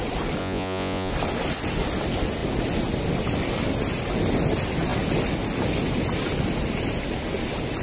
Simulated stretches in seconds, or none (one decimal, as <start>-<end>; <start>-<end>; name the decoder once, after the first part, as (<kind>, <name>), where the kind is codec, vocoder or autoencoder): 0.4-1.1 (vocoder, Vocos)